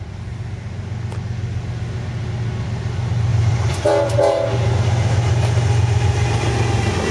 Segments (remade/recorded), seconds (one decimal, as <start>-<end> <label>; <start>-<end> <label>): 0.0-3.3 recorded; 3.3-3.9 remade; 3.9-7.1 recorded